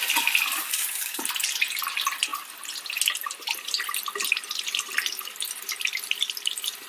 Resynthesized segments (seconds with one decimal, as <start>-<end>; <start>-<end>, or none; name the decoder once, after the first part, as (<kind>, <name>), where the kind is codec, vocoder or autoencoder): 0.6-1.2 (codec, DAC)